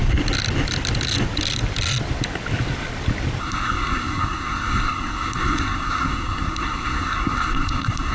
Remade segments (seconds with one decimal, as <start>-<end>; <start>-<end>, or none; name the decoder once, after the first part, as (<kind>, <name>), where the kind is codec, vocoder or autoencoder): 3.4-8.1 (codec, SNAC)